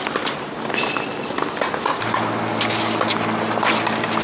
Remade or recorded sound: recorded